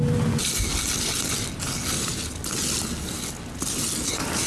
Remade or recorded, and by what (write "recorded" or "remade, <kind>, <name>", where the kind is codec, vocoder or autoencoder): recorded